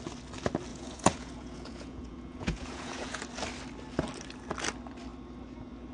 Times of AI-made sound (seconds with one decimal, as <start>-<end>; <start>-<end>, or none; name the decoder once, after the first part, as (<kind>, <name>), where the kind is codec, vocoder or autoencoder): 0.7-3.2 (vocoder, Vocos)